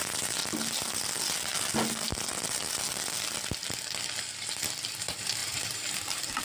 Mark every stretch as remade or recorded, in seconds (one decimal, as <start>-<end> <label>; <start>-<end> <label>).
0.0-0.4 remade; 0.4-4.2 recorded; 4.2-6.4 remade